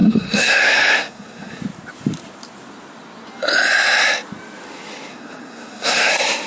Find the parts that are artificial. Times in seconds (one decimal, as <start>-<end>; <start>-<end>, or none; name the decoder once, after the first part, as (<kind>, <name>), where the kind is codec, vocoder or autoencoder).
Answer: 0.0-1.6 (codec, SNAC); 5.1-6.1

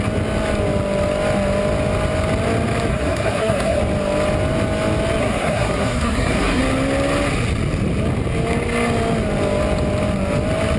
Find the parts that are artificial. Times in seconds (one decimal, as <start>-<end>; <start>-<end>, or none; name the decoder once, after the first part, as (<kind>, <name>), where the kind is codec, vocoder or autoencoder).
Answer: 2.9-3.8 (codec, SNAC); 5.2-6.6

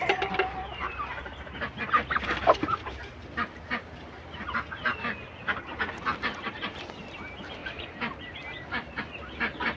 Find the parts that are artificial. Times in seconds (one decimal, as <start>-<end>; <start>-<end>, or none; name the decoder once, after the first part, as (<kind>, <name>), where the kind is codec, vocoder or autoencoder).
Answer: none

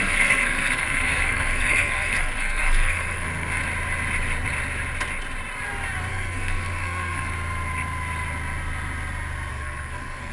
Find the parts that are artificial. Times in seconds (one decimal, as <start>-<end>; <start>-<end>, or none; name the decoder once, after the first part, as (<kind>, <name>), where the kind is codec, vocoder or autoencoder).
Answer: 0.0-3.6 (codec, SNAC); 6.1-7.3; 9.5-10.3

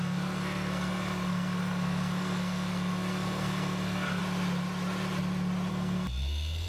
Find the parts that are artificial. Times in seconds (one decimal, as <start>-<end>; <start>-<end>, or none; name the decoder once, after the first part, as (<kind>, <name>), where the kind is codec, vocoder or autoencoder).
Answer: 0.0-4.2 (codec, SNAC); 5.7-6.7

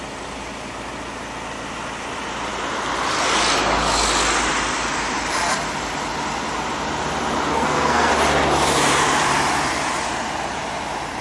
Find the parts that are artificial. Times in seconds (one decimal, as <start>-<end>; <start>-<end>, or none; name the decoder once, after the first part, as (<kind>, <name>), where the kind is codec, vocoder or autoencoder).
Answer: 7.5-8.1 (codec, SNAC)

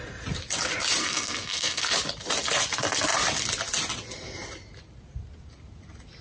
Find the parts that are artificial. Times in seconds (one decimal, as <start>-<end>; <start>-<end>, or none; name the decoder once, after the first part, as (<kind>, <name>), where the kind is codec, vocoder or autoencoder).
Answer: 1.0-1.8 (codec, SNAC)